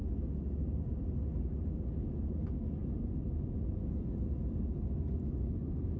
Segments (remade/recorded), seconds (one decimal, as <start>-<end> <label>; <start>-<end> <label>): 0.0-6.0 recorded